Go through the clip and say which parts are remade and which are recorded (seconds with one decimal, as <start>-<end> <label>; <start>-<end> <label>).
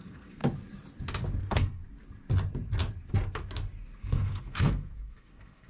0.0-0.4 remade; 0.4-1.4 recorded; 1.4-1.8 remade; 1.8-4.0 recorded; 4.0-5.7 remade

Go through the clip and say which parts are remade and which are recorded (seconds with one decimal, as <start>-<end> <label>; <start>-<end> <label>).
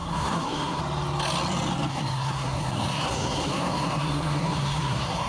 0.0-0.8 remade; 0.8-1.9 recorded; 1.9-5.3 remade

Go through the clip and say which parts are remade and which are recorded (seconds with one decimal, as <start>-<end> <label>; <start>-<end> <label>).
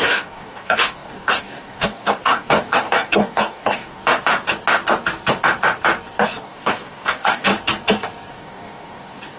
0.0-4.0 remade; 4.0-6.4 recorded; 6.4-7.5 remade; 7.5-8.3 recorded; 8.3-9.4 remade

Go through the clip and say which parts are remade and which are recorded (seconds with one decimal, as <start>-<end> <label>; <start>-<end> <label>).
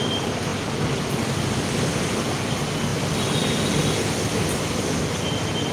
0.0-5.7 recorded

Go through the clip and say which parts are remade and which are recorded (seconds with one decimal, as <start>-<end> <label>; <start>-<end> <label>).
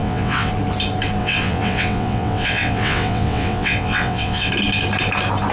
0.0-0.5 remade; 0.5-1.2 recorded; 1.2-4.5 remade; 4.5-5.5 recorded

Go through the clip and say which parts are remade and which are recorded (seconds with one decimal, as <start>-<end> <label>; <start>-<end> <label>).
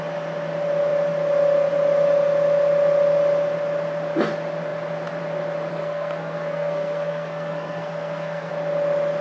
0.0-5.7 recorded; 5.7-8.5 remade; 8.5-9.2 recorded